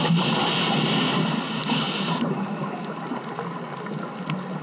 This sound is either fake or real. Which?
real